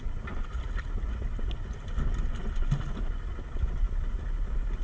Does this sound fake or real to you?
real